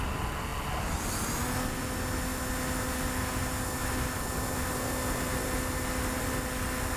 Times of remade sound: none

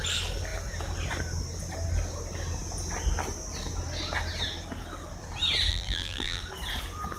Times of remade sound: 5.7-6.4 (vocoder, BigVGAN v2)

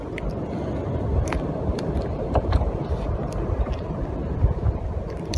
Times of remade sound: 1.1-2.8 (vocoder, BigVGAN v2)

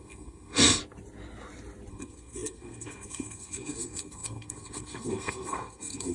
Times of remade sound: 0.0-0.8 (codec, SNAC); 1.9-6.1